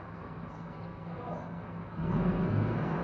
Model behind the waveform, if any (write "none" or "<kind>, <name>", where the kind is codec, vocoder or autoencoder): codec, SNAC